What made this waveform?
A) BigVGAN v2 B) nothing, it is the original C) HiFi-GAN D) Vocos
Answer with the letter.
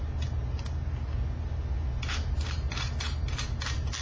B